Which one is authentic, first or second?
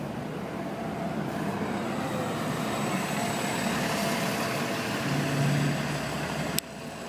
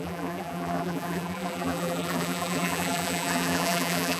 first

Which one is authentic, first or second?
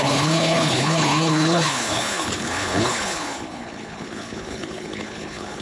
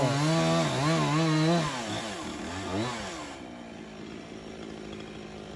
second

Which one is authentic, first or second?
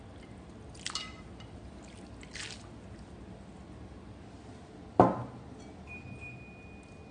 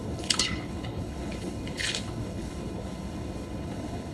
first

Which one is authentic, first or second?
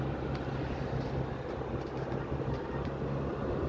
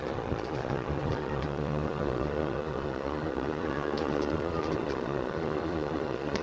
first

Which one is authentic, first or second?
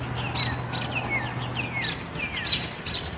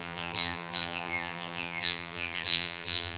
first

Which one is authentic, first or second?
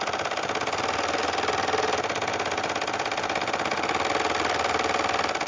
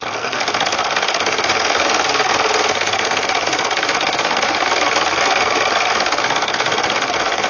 first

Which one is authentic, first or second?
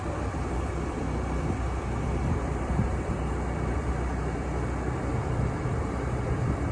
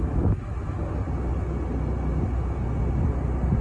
second